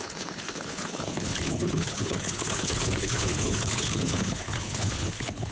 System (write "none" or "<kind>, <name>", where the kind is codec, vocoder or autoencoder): codec, HILCodec